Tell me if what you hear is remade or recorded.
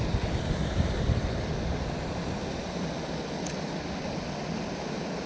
recorded